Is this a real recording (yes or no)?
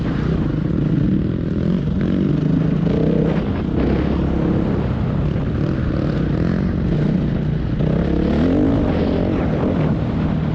yes